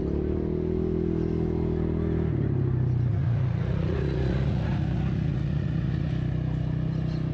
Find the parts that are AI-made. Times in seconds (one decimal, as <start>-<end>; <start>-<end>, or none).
3.1-6.1